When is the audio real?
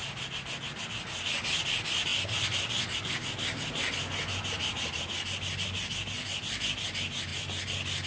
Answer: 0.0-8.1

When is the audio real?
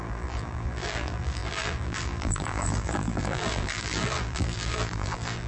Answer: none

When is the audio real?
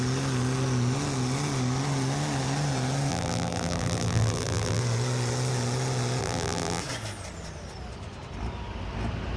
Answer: 0.0-3.1; 4.8-6.2; 6.8-9.4